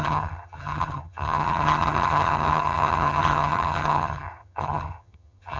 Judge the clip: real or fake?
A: fake